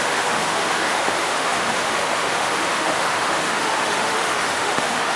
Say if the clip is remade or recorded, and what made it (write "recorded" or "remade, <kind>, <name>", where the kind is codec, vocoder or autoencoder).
remade, autoencoder, DAC-VAE